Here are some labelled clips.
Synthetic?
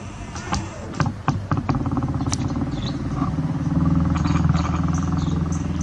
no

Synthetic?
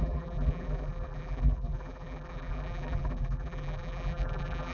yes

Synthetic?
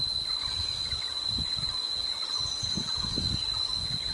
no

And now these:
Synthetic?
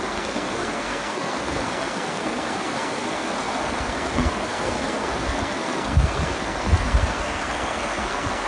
yes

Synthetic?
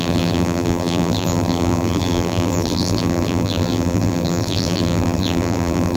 yes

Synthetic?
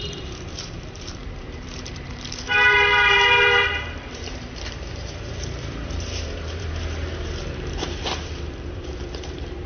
yes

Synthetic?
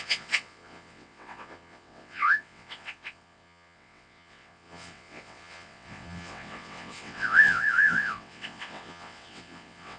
yes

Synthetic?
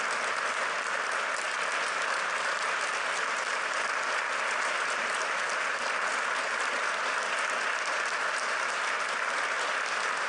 no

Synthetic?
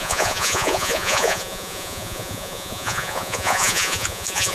yes